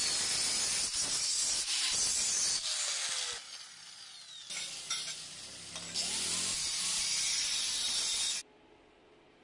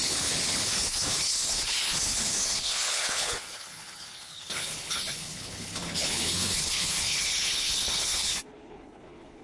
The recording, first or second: first